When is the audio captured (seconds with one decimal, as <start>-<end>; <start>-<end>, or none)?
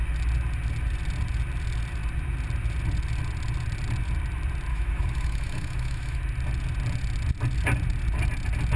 0.0-4.7; 6.2-8.8